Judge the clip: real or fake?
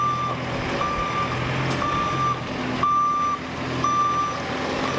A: real